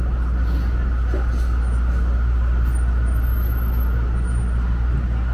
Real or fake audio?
real